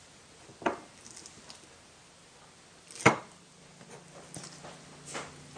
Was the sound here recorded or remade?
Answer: recorded